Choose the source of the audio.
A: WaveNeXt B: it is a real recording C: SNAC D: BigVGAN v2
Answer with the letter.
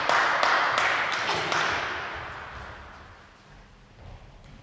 B